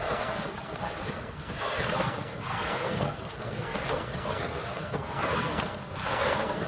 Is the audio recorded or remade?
remade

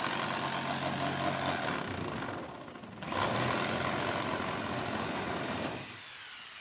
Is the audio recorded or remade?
recorded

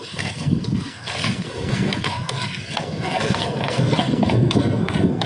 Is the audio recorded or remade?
remade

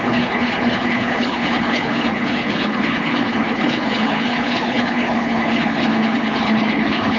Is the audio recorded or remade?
remade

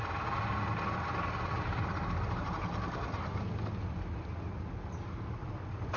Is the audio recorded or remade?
recorded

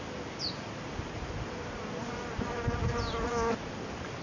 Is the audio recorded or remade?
recorded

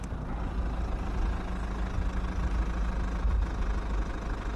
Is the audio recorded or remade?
recorded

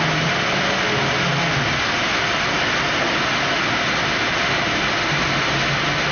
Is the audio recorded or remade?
recorded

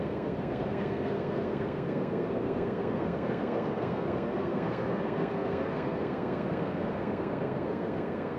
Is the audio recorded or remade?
remade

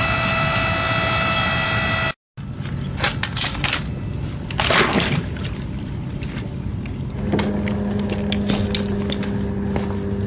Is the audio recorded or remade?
recorded